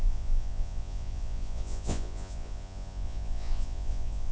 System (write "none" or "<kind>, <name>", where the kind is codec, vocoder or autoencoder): vocoder, Vocos